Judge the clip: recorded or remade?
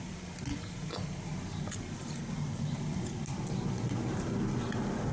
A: recorded